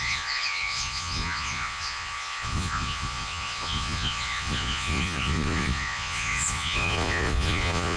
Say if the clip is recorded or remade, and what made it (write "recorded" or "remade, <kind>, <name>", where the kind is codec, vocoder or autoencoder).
remade, vocoder, Vocos